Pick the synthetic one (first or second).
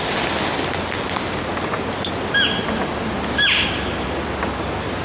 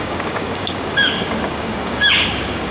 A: second